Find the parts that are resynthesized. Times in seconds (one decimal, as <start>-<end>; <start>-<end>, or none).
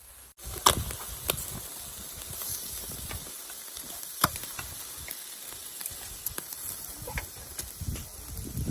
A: 2.5-7.5